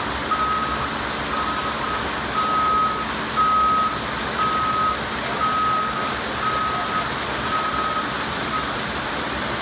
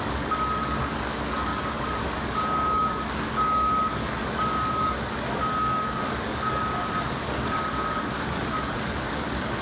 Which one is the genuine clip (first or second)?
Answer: first